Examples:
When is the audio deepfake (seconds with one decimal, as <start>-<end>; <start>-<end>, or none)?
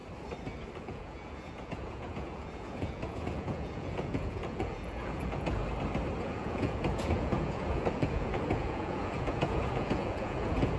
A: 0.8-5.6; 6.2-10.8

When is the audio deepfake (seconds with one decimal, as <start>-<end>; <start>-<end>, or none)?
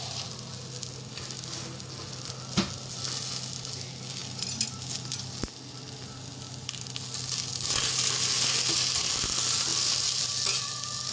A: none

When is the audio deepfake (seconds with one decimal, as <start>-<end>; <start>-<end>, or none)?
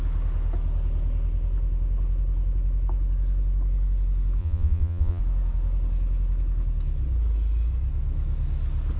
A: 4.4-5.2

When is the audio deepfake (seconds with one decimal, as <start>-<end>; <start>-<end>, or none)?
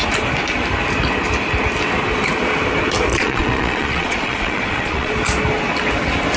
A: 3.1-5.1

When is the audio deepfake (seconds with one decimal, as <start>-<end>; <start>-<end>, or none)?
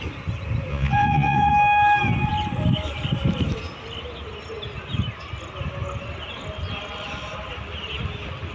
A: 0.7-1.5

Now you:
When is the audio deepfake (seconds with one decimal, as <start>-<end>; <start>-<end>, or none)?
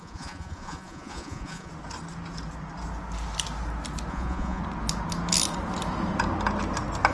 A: 0.0-1.7; 4.1-4.6